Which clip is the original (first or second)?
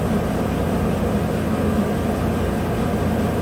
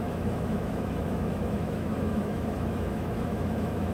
first